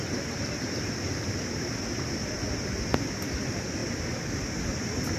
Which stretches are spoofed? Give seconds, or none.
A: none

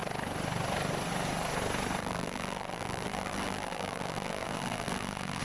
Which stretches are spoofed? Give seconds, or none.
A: 2.0-5.4